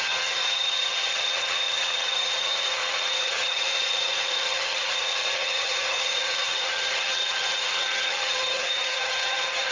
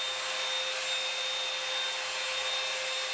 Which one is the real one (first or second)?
second